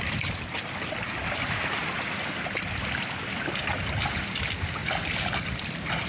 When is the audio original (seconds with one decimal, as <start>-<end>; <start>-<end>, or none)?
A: 0.0-4.8